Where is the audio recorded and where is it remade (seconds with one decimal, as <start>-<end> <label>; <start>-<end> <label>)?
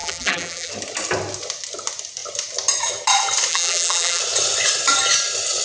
0.0-0.7 remade; 0.7-3.5 recorded; 3.5-4.2 remade; 4.2-5.6 recorded